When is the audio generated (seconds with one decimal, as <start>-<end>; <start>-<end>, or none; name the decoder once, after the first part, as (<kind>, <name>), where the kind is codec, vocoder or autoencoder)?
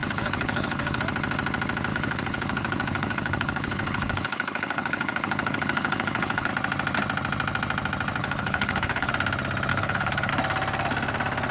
0.0-1.0 (codec, HILCodec); 1.9-6.5; 8.2-9.1; 9.7-10.3